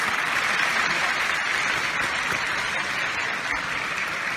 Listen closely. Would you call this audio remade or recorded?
recorded